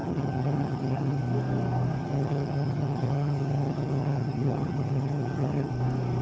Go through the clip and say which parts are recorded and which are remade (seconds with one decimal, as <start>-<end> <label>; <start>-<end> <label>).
0.0-1.2 remade; 1.2-2.0 recorded; 2.0-5.7 remade; 5.7-6.2 recorded